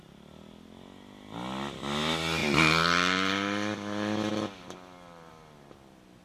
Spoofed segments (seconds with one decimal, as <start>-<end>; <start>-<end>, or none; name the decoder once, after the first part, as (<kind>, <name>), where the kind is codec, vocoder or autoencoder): none

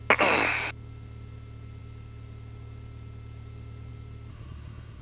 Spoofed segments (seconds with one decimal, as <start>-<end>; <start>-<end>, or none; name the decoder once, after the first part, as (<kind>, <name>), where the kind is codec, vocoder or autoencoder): 4.3-5.0 (codec, SNAC)

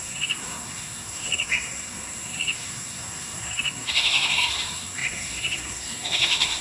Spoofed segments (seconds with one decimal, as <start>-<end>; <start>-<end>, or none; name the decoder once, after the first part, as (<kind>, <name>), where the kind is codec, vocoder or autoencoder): 0.0-6.6 (codec, SNAC)